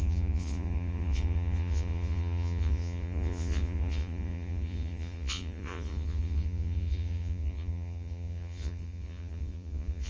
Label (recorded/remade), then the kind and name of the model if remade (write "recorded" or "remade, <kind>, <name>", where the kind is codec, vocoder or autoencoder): remade, vocoder, Vocos